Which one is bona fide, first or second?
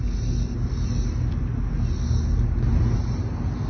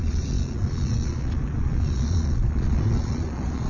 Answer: first